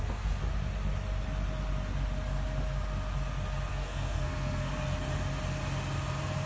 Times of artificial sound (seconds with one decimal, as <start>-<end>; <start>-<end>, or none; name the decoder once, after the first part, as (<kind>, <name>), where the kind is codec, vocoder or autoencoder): 0.0-0.4 (codec, SNAC); 3.7-4.7